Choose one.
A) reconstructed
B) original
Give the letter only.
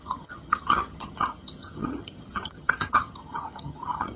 A